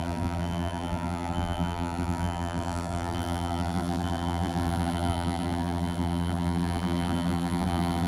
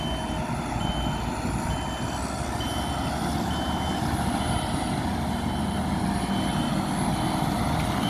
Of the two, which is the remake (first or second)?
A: first